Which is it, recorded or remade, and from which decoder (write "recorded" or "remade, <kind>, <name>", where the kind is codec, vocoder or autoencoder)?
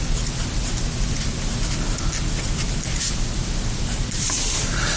recorded